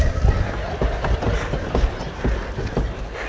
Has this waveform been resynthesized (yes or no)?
no